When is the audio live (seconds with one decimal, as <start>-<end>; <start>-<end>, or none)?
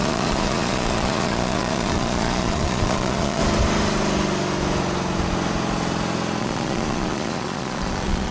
3.4-6.4